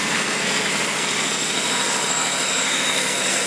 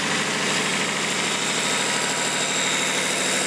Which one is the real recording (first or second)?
second